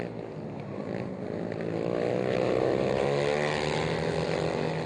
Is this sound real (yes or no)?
yes